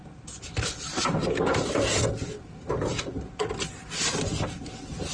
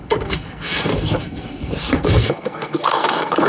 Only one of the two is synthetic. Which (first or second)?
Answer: second